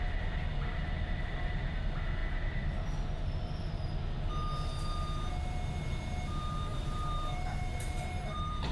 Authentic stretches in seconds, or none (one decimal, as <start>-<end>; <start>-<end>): 0.0-6.7